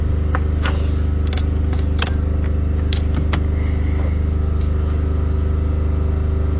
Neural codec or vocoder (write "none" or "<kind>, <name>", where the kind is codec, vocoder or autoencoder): none